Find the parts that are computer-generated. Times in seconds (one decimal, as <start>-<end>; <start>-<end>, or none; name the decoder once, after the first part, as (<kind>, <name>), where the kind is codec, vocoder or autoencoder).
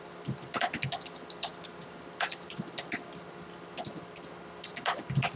none